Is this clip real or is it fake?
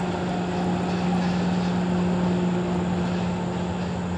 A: real